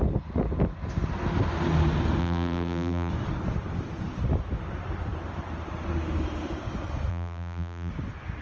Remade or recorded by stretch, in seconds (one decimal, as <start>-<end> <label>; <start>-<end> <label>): 0.0-2.2 recorded; 2.2-3.1 remade; 3.1-7.1 recorded; 7.1-7.9 remade; 7.9-8.4 recorded